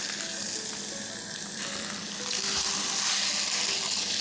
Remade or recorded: recorded